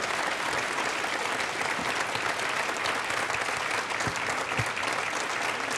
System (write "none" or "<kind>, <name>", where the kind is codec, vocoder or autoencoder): none